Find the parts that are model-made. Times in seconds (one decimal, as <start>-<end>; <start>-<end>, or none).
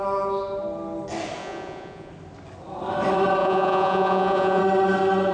1.4-2.1; 3.4-4.6